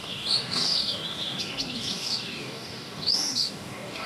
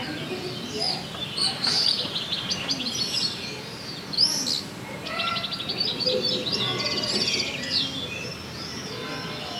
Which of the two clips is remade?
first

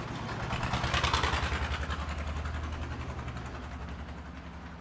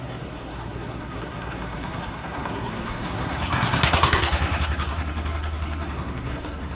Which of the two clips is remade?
second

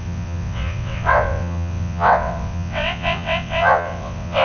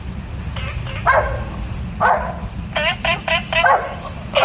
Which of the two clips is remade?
first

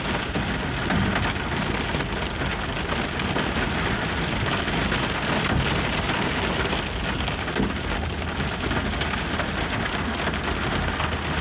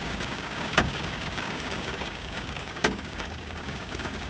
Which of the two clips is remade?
second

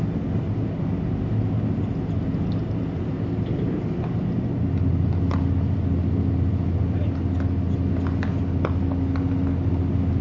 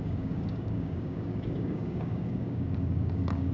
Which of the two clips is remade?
second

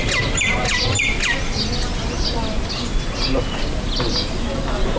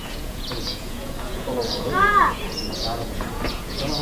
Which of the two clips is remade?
second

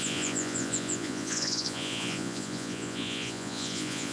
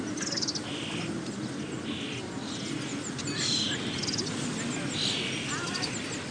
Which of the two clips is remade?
first